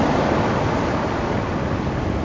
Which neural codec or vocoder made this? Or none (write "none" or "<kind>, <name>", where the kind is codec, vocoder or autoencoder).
none